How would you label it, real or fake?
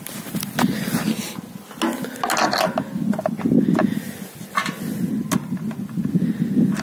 real